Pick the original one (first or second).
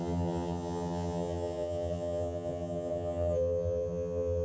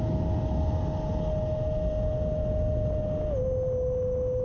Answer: second